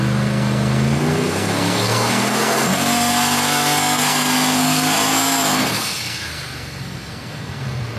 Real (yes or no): no